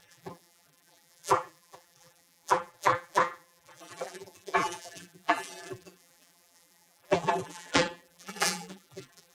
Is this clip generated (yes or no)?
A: yes